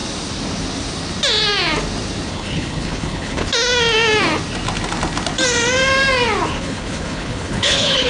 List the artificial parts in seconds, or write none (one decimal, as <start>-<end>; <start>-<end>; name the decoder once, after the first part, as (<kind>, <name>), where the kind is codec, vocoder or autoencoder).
2.3-3.5 (codec, HILCodec); 6.5-8.1